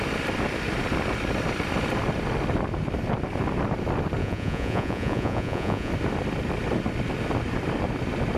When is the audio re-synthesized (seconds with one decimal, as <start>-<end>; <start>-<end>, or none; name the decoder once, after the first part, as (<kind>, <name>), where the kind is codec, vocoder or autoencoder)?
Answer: 4.2-5.9 (vocoder, Vocos)

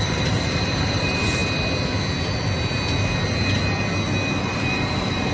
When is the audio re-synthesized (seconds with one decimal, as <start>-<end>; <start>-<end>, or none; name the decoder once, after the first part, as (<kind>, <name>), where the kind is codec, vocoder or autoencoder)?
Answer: 0.0-1.4 (vocoder, BigVGAN v2); 4.4-5.3

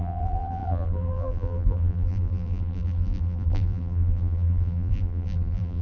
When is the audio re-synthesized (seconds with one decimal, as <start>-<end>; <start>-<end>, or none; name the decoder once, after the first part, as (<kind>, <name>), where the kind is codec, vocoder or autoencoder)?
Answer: 0.0-5.8 (vocoder, BigVGAN v2)

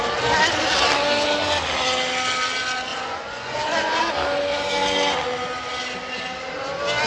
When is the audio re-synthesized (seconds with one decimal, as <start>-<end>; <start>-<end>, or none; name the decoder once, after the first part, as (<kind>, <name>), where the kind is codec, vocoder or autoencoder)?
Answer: 2.9-4.0 (vocoder, Vocos)